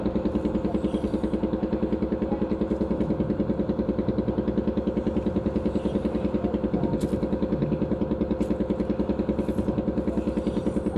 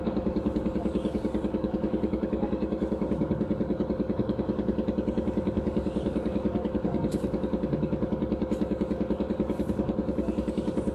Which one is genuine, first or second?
first